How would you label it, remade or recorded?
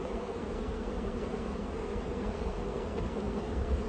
remade